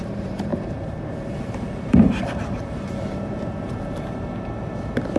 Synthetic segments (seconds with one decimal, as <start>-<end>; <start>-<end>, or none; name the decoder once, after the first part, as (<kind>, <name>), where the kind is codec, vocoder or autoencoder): 0.0-5.2 (vocoder, BigVGAN v2)